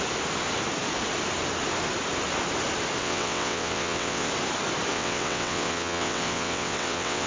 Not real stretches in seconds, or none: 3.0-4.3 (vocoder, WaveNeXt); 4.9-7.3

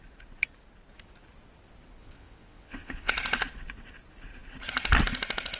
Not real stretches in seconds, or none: 2.0-3.1 (vocoder, WaveNeXt)

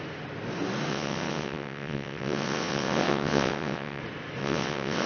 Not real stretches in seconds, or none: 0.9-4.0 (vocoder, WaveNeXt); 4.4-5.1

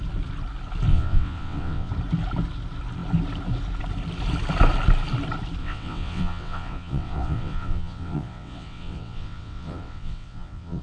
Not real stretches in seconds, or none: 0.9-1.9 (vocoder, WaveNeXt); 5.6-10.8

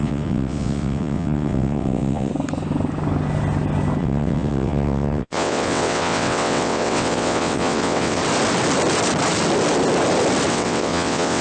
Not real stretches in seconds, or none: 0.0-2.3 (vocoder, WaveNeXt); 4.0-8.2; 10.5-11.4

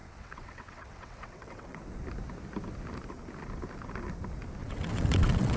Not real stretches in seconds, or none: 0.0-1.8 (vocoder, WaveNeXt); 4.6-5.6